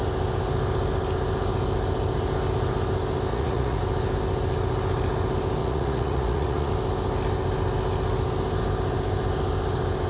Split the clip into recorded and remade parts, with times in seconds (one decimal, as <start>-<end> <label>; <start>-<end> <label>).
0.0-3.3 recorded; 3.3-3.8 remade; 3.8-5.6 recorded; 5.6-6.7 remade; 6.7-10.1 recorded